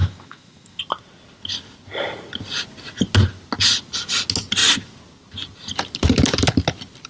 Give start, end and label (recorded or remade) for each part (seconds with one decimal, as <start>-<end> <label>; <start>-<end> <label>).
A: 0.0-0.8 remade; 0.8-7.1 recorded

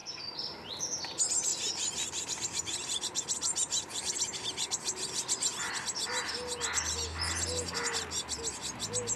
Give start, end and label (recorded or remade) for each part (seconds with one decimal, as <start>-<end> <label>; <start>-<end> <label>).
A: 0.0-0.7 remade; 0.7-1.5 recorded; 1.5-5.7 remade; 5.7-9.2 recorded

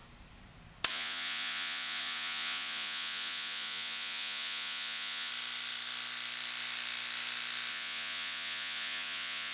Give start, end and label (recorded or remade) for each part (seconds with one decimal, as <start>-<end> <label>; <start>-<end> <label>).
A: 0.0-0.9 recorded; 0.9-5.3 remade; 5.3-7.7 recorded; 7.7-9.5 remade

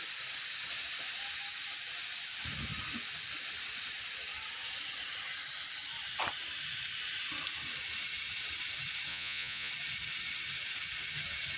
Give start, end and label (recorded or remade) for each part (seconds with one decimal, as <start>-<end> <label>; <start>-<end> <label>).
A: 0.0-9.1 recorded; 9.1-9.7 remade; 9.7-11.6 recorded

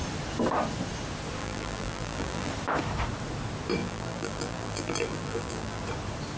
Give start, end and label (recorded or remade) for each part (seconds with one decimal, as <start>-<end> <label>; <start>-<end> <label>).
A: 0.0-1.4 recorded; 1.4-2.5 remade; 2.5-3.8 recorded; 3.8-5.8 remade; 5.8-6.4 recorded